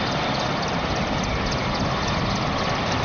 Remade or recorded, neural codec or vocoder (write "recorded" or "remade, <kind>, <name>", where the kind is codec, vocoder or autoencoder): remade, vocoder, BigVGAN v2